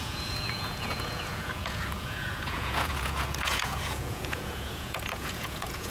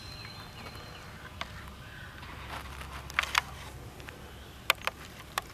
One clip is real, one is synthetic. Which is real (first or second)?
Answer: second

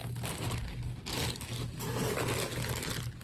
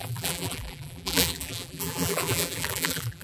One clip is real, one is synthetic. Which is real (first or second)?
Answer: first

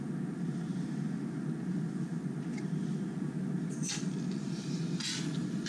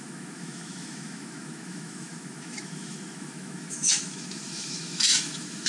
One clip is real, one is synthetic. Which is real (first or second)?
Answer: first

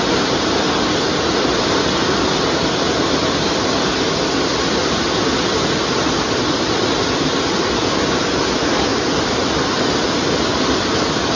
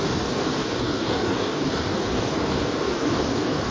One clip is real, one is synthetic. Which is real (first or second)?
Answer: first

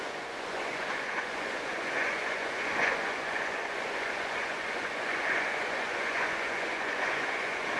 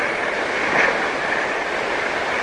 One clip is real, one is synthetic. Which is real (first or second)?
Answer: second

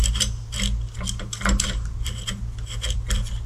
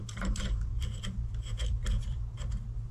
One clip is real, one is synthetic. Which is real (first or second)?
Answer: first